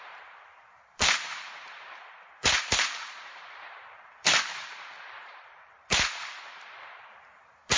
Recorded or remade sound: remade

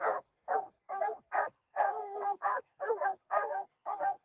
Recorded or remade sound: remade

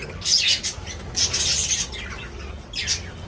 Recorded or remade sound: recorded